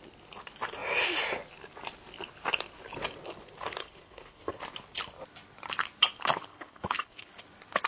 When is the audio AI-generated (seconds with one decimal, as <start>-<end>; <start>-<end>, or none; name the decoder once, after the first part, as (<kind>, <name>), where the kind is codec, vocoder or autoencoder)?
3.8-4.6 (codec, HILCodec); 6.5-7.4